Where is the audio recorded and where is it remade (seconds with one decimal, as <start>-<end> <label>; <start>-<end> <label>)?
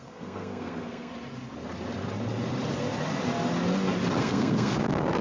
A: 0.0-1.1 remade; 1.1-4.2 recorded; 4.2-5.2 remade